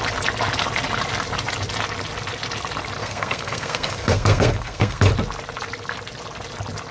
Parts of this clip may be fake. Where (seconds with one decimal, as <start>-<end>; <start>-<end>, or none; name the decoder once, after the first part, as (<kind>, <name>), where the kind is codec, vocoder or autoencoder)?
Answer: 3.0-5.1 (codec, SNAC)

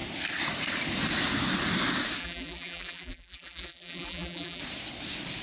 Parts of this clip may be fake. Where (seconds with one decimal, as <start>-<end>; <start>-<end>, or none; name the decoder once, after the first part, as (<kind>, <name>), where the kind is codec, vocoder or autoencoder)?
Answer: 2.2-4.6 (vocoder, BigVGAN v2)

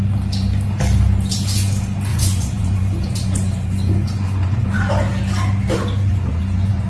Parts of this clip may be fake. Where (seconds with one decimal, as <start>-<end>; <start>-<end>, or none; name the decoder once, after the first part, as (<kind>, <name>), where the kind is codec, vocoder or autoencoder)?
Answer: 2.1-4.9 (vocoder, Vocos); 6.1-6.9

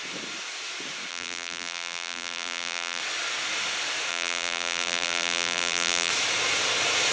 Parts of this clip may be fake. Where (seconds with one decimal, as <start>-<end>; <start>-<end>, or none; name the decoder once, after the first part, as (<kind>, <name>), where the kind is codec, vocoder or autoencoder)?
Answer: 1.1-3.0 (vocoder, BigVGAN v2); 4.1-6.1

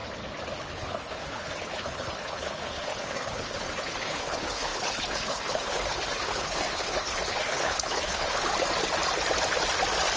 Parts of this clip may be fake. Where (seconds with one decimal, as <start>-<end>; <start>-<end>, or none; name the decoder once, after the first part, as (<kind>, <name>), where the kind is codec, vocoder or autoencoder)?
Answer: 0.6-8.5 (codec, HILCodec)